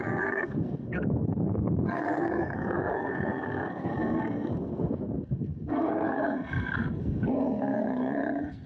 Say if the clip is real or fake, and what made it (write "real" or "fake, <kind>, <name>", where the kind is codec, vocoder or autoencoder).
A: fake, codec, SNAC